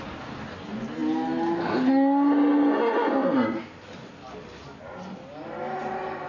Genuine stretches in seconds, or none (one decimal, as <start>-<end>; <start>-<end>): 0.0-6.3